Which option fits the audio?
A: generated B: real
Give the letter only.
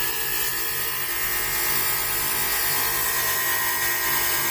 B